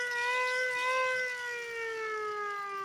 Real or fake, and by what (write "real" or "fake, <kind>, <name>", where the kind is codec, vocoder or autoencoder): real